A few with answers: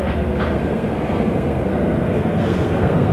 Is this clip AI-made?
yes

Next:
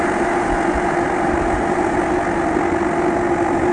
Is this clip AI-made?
no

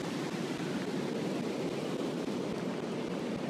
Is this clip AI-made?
no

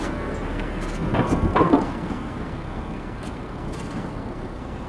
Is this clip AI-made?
yes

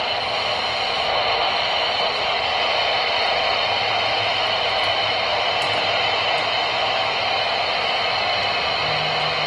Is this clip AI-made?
no